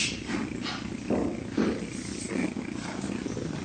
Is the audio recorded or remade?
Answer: recorded